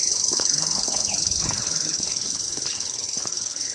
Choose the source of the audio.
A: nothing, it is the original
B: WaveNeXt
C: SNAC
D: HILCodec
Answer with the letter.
D